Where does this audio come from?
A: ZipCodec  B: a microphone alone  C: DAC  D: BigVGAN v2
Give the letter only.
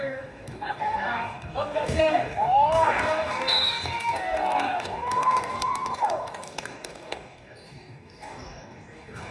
C